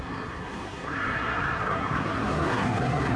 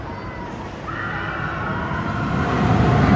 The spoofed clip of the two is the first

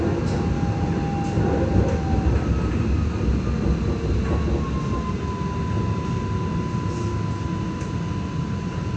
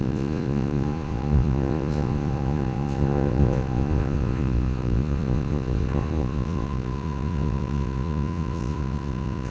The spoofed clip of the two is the second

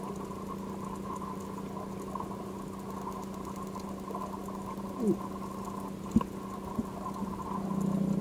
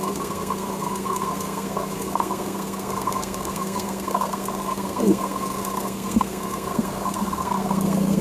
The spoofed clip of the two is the second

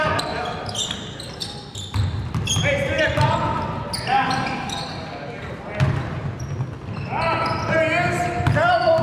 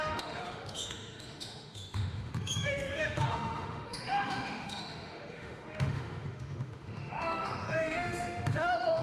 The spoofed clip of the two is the second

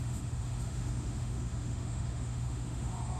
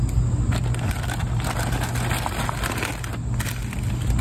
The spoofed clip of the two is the first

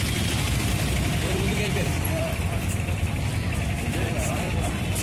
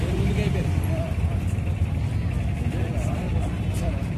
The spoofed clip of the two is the first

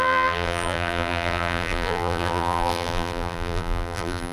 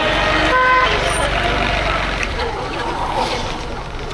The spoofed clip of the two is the first